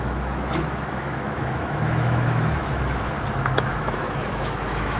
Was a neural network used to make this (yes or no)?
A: yes